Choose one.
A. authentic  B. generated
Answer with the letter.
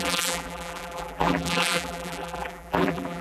B